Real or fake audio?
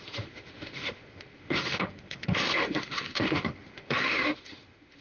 fake